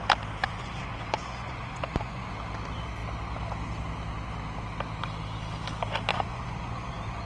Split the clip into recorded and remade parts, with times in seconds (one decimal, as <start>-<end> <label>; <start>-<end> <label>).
0.0-0.4 recorded; 0.4-2.3 remade; 2.3-6.1 recorded; 6.1-7.3 remade